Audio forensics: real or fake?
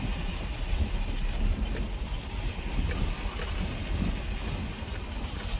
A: real